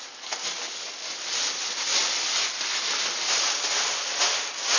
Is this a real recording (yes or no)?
yes